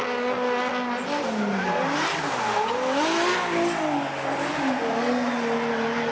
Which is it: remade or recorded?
recorded